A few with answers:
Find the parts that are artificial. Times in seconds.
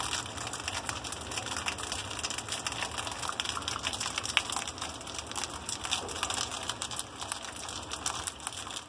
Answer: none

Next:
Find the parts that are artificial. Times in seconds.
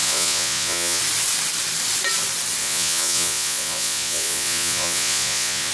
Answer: 0.0-1.0; 2.6-5.7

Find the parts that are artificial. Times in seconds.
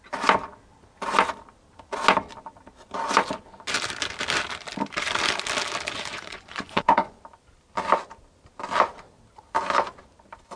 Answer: 6.1-7.2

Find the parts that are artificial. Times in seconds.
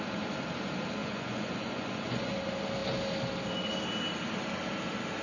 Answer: 1.0-2.3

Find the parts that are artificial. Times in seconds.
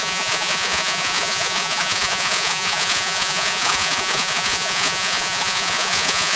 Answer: 0.0-6.4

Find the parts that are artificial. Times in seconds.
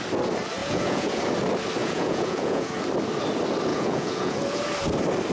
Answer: 0.6-1.2; 1.8-2.7; 3.7-4.6